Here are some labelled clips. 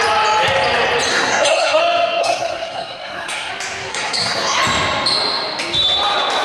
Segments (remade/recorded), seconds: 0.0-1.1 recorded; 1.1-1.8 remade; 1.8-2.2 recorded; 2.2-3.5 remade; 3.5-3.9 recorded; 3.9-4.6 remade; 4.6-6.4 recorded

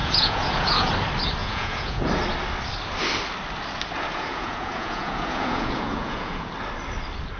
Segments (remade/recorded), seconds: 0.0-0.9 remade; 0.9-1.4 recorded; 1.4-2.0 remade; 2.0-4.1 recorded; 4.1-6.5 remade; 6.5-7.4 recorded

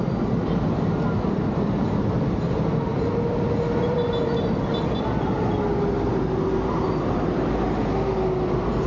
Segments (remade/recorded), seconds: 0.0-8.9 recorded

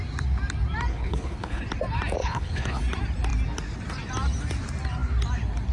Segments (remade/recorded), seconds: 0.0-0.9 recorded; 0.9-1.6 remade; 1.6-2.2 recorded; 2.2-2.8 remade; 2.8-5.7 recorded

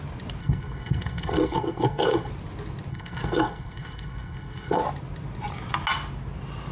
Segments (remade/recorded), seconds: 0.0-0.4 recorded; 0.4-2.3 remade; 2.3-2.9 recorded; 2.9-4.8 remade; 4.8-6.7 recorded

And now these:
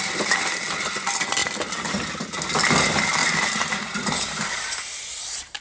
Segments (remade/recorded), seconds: 0.0-5.6 recorded